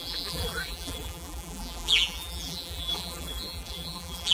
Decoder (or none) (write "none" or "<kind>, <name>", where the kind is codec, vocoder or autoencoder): vocoder, BigVGAN v2